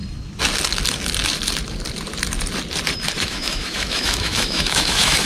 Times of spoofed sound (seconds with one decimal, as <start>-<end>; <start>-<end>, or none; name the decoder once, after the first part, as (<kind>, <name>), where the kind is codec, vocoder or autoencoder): 3.2-5.3 (autoencoder, DAC-VAE)